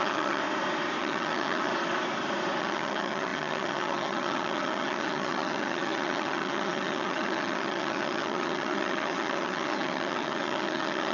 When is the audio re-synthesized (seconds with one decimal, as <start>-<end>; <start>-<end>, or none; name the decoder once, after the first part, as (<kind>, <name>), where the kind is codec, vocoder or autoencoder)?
0.0-0.4 (vocoder, HiFi-GAN); 1.0-1.7; 2.6-11.1